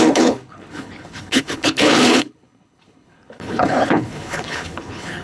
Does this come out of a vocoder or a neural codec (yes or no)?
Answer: yes